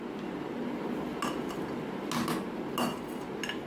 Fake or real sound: real